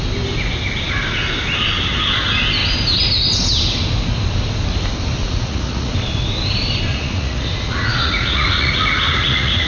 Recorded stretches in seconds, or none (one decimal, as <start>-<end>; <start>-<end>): 0.0-5.2; 5.9-6.9